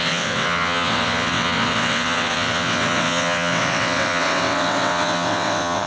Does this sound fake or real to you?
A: fake